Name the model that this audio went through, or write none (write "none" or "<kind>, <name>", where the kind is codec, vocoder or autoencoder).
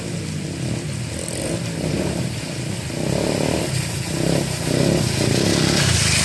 none